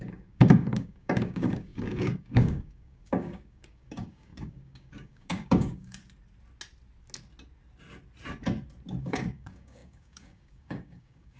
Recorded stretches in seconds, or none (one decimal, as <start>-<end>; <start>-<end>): 6.0-9.0